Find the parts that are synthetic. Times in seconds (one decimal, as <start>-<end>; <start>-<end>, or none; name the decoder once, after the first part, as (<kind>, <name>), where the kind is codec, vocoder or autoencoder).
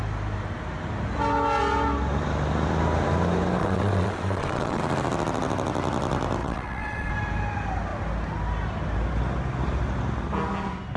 3.6-4.8 (vocoder, WaveNeXt); 6.4-7.1